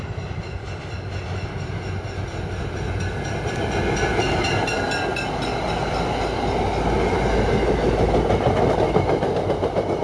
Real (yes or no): yes